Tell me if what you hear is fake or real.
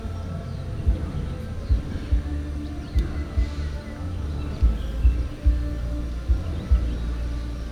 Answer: real